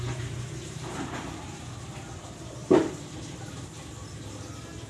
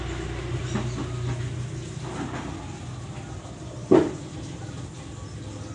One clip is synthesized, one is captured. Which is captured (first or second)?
second